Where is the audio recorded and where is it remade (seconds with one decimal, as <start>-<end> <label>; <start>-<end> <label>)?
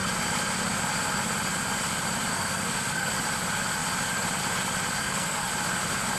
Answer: 0.0-2.3 recorded; 2.3-3.1 remade; 3.1-5.0 recorded; 5.0-5.5 remade; 5.5-6.2 recorded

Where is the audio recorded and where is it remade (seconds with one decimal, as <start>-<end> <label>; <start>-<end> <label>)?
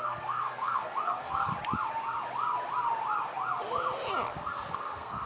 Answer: 0.0-1.5 remade; 1.5-4.7 recorded; 4.7-5.3 remade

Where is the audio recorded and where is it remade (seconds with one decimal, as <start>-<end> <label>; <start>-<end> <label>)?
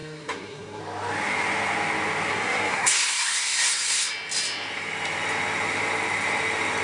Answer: 0.0-0.8 remade; 0.8-2.3 recorded; 2.3-4.1 remade; 4.1-6.8 recorded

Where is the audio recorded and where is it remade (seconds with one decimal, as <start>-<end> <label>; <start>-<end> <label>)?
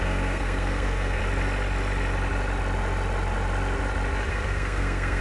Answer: 0.0-1.2 remade; 1.2-4.3 recorded; 4.3-5.2 remade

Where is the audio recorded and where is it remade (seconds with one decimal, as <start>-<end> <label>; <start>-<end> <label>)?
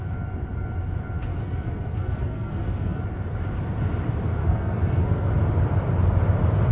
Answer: 0.0-1.3 recorded; 1.3-3.0 remade; 3.0-4.4 recorded; 4.4-5.3 remade; 5.3-6.7 recorded